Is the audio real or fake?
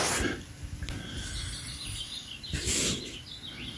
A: real